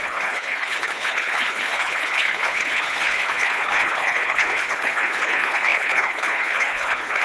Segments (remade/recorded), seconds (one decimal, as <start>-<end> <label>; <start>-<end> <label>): 0.0-7.2 remade